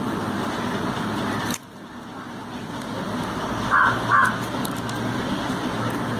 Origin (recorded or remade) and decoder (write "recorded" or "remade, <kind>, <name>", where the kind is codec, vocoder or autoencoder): recorded